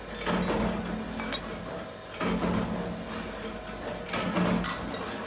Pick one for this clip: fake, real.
real